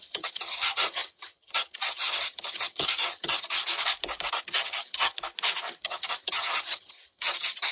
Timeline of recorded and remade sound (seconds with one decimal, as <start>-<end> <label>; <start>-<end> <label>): 0.0-3.6 remade; 3.6-4.4 recorded; 4.4-5.1 remade; 5.1-5.8 recorded; 5.8-7.7 remade